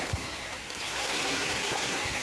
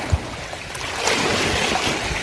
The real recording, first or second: second